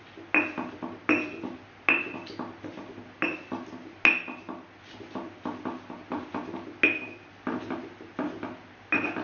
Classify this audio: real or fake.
real